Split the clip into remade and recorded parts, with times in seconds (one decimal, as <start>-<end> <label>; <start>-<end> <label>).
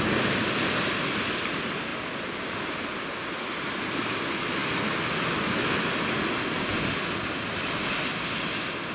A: 0.0-8.9 recorded